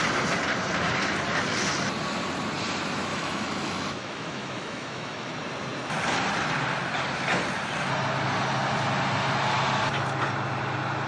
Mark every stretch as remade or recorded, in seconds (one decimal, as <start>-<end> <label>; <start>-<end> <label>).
0.0-3.1 recorded; 3.1-5.3 remade; 5.3-11.1 recorded